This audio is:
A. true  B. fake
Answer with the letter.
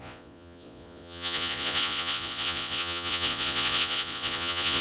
B